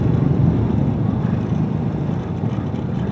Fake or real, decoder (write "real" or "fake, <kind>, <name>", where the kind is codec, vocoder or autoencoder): real